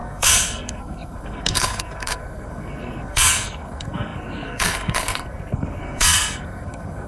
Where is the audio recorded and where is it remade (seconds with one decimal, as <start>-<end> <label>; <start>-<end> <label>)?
0.0-7.1 remade